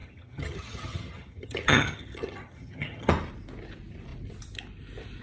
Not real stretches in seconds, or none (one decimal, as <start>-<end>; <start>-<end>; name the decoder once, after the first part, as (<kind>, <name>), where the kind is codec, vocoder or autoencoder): 0.0-3.1 (vocoder, HiFi-GAN)